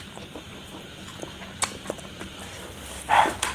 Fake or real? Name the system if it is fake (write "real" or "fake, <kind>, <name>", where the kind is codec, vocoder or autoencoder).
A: fake, vocoder, BigVGAN v2